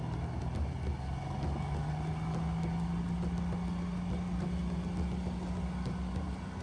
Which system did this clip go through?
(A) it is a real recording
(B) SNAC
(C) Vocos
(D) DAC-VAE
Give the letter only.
A